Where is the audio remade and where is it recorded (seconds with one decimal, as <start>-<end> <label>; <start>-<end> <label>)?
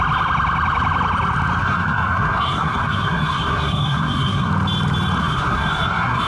0.0-1.6 recorded; 1.6-4.5 remade; 4.5-5.2 recorded; 5.2-6.3 remade